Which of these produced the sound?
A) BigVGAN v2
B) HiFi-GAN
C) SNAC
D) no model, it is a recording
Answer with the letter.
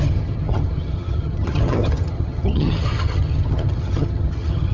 B